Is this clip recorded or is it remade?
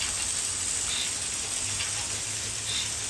recorded